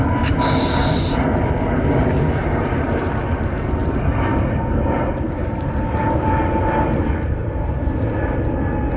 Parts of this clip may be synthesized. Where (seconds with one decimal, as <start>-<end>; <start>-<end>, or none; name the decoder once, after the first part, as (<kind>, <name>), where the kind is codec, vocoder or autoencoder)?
2.4-2.9 (vocoder, BigVGAN v2); 3.8-6.3